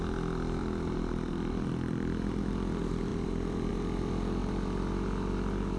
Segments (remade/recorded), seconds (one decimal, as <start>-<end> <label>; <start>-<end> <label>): 0.0-3.1 recorded; 3.1-3.7 remade; 3.7-5.8 recorded